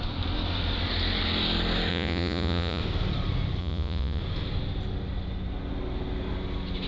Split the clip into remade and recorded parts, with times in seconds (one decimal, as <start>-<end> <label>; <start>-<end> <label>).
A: 0.0-1.9 recorded; 1.9-2.8 remade; 2.8-3.6 recorded; 3.6-4.2 remade; 4.2-6.9 recorded